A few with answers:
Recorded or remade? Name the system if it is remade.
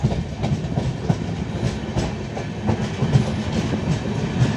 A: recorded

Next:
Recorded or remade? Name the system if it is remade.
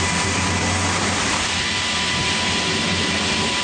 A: recorded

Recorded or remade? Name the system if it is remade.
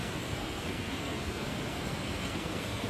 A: remade, codec, SNAC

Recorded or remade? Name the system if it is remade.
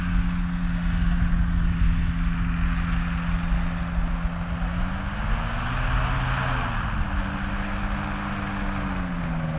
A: recorded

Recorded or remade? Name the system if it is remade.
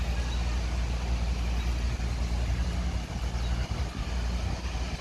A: recorded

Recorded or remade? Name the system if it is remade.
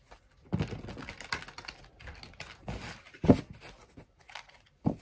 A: recorded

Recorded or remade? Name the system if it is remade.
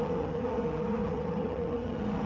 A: remade, vocoder, HiFi-GAN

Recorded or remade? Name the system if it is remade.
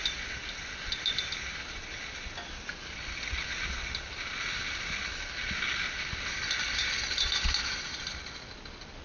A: recorded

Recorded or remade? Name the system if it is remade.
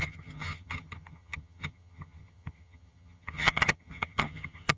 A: remade, vocoder, HiFi-GAN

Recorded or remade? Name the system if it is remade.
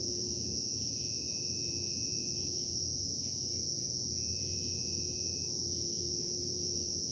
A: remade, vocoder, Vocos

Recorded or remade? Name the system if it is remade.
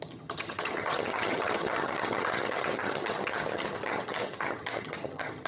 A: remade, vocoder, HiFi-GAN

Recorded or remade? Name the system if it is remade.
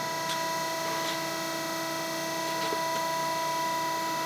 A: recorded